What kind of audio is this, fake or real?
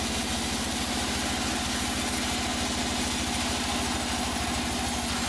real